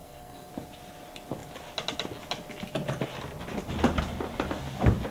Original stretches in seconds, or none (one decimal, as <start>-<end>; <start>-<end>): 0.5-5.1